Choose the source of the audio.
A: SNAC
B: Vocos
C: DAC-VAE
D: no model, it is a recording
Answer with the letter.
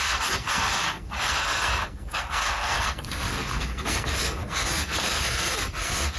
A